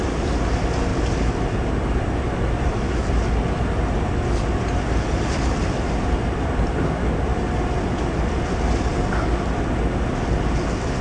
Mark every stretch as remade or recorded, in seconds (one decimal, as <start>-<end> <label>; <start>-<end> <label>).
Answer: 0.0-11.0 recorded